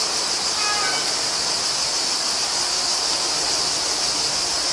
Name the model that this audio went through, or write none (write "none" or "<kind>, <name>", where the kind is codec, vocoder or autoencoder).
none